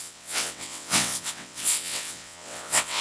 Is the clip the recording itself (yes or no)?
no